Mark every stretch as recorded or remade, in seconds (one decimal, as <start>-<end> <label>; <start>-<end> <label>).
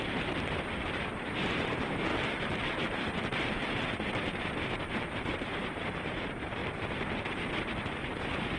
0.0-2.1 remade; 2.1-4.7 recorded; 4.7-6.6 remade; 6.6-7.6 recorded; 7.6-8.6 remade